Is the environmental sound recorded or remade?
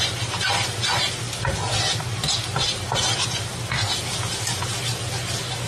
recorded